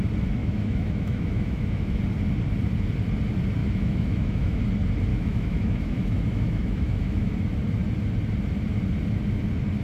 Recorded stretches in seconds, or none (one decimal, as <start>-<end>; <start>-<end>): 0.0-0.4; 2.0-3.6; 4.6-5.1; 7.3-9.8